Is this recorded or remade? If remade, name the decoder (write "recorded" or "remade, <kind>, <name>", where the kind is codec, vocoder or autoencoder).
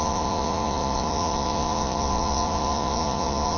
remade, vocoder, Vocos